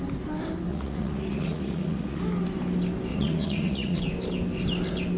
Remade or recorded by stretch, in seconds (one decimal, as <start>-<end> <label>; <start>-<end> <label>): 0.0-0.7 recorded; 0.7-2.2 remade; 2.2-3.1 recorded; 3.1-4.0 remade; 4.0-5.2 recorded